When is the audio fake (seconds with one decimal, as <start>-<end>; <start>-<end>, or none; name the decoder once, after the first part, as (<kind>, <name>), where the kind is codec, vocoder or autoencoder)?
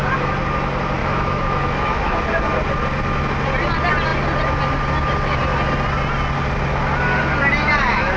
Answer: 1.0-2.2 (autoencoder, DAC-VAE)